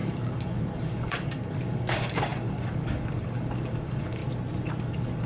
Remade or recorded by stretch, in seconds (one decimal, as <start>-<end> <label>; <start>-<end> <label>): 0.0-4.2 remade; 4.2-4.8 recorded; 4.8-5.3 remade